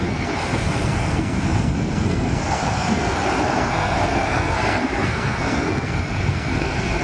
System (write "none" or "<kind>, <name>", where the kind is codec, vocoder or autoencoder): codec, SNAC